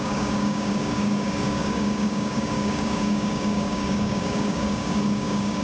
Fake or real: fake